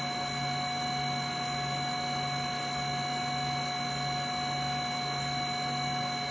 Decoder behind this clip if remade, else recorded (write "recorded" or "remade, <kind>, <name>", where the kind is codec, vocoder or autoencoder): recorded